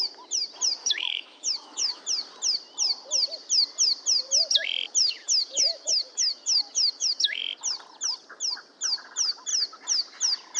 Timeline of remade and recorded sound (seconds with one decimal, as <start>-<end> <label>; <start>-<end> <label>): 0.0-0.8 recorded; 0.8-2.0 remade; 2.0-5.0 recorded; 5.0-7.4 remade; 7.4-10.6 recorded